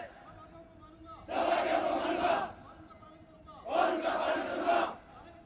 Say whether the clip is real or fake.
real